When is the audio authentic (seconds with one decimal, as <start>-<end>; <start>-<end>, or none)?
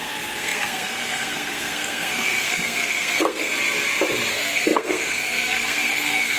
3.5-4.3